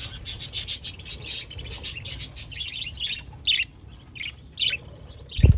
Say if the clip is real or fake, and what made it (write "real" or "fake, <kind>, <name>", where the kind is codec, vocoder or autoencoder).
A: real